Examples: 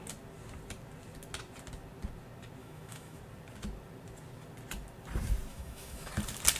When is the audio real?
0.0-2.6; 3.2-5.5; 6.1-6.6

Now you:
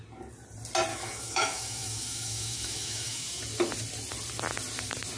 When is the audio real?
0.0-0.9; 3.4-5.2

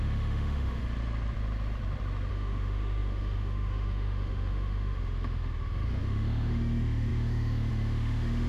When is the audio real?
0.8-2.3

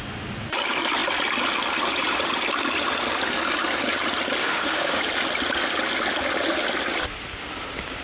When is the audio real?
0.0-4.4; 5.0-8.0

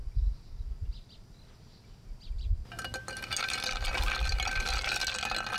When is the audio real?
0.0-5.6

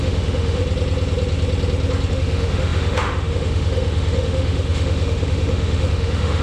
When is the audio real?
0.6-2.1